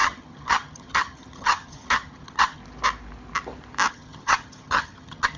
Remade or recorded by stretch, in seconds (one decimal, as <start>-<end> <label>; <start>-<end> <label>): 0.0-2.6 remade; 2.6-3.9 recorded; 3.9-5.4 remade